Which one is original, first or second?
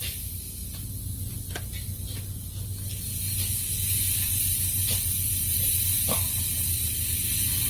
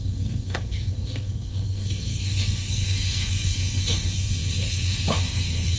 first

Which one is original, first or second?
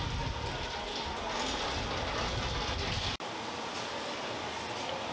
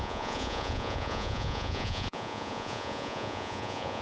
first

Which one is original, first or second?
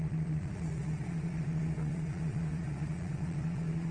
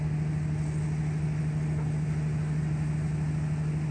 second